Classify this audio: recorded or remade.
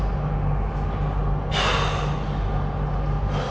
recorded